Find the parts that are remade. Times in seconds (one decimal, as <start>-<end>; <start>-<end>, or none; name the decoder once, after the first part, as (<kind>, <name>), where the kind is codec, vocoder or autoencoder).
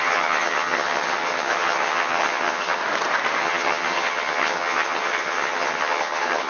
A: 0.0-2.8 (vocoder, HiFi-GAN); 3.4-6.5